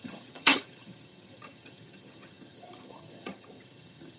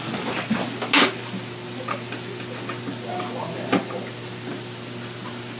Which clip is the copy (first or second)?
first